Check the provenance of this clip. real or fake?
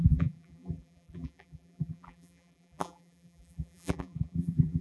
fake